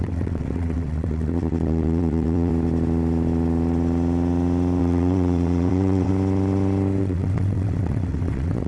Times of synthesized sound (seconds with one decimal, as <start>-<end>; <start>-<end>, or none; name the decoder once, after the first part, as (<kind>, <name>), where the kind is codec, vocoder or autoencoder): 0.0-2.5 (vocoder, WaveNeXt); 4.8-6.1; 7.0-8.7